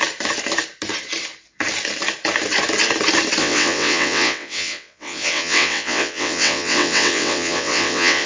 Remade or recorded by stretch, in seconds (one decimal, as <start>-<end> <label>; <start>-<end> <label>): 0.0-3.4 recorded; 3.4-8.3 remade